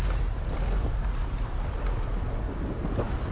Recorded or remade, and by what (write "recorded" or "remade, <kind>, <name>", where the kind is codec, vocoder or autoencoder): recorded